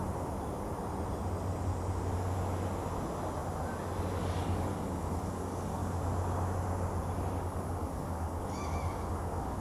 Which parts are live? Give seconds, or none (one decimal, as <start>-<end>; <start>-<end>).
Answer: 0.0-4.2; 5.8-7.4